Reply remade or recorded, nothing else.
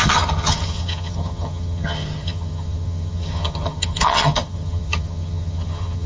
remade